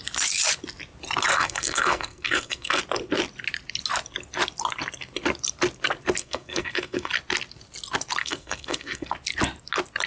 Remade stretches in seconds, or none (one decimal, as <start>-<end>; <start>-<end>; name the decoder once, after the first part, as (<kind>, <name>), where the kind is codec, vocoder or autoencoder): 1.3-2.8 (codec, SNAC); 6.2-7.1; 8.2-9.1